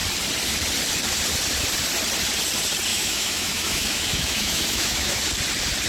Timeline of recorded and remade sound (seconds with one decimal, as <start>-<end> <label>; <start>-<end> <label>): 0.0-2.9 recorded; 2.9-5.2 remade; 5.2-5.9 recorded